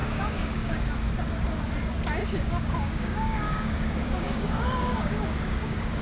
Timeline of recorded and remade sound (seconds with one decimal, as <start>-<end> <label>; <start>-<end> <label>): 0.0-0.8 remade; 0.8-2.2 recorded; 2.2-6.0 remade